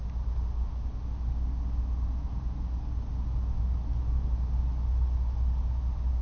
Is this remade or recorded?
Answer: recorded